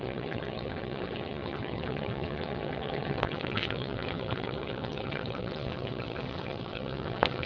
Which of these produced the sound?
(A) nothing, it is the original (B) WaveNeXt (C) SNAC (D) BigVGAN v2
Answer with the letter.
B